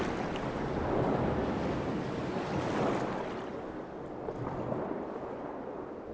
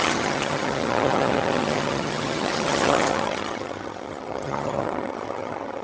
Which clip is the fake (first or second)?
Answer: second